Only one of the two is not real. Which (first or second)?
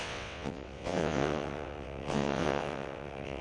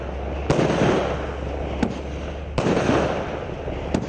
first